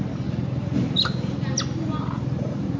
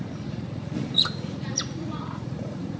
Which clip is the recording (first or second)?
first